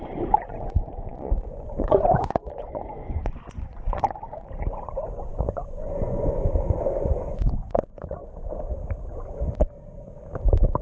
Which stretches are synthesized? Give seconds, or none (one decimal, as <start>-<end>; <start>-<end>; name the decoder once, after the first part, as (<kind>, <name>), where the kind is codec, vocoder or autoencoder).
0.0-8.2 (vocoder, Vocos)